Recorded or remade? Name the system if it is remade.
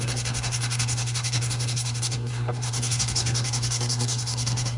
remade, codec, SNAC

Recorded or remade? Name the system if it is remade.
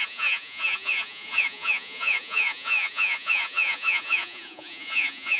remade, vocoder, Vocos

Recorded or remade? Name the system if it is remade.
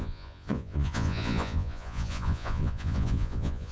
remade, vocoder, Vocos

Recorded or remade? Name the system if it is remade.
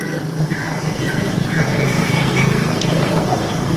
remade, codec, SNAC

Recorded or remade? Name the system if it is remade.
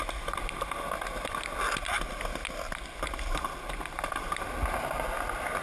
recorded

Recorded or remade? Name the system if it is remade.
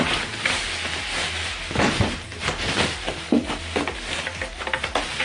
recorded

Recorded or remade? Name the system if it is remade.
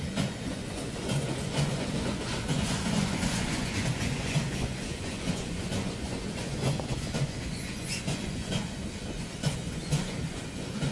remade, vocoder, Vocos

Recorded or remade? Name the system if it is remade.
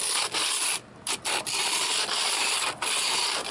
recorded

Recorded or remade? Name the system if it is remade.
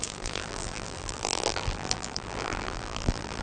remade, vocoder, BigVGAN v2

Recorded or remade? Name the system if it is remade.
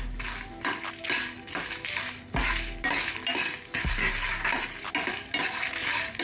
recorded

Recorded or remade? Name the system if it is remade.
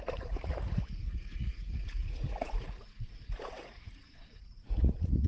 remade, vocoder, Vocos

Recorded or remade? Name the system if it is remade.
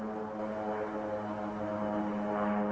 recorded